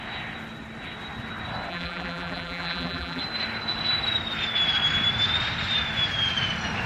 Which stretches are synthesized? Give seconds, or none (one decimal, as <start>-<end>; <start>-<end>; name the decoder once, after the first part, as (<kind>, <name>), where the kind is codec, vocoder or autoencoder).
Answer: 1.7-3.2 (vocoder, BigVGAN v2)